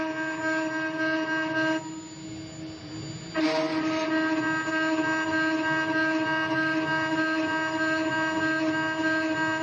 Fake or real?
real